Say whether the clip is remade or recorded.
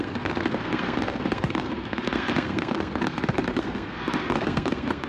remade